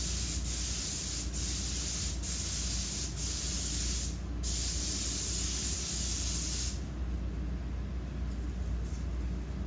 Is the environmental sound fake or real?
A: real